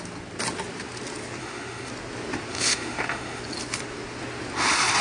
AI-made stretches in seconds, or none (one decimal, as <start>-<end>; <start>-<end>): 1.4-1.9; 2.5-3.4